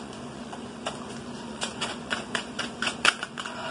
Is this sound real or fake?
fake